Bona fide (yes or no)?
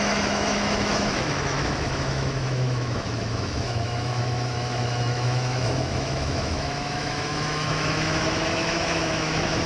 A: no